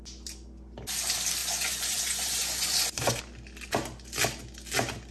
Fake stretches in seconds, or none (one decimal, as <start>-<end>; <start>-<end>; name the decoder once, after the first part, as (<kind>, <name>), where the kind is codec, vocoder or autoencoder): 1.4-3.2 (vocoder, Vocos)